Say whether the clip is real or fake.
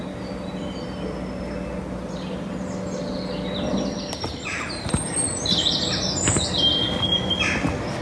real